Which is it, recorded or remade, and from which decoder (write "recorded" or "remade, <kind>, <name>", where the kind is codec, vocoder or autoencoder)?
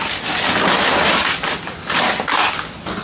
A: recorded